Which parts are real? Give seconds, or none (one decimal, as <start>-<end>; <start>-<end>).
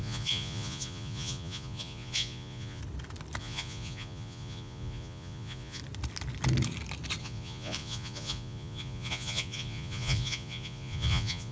2.8-3.4; 5.8-7.2